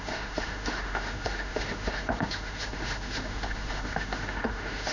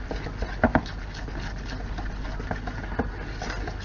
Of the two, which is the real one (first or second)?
second